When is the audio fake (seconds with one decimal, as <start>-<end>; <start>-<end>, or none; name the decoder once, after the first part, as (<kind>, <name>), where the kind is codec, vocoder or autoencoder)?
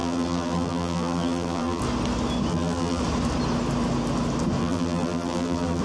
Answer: 0.0-1.8 (vocoder, BigVGAN v2); 2.5-3.0; 4.6-5.8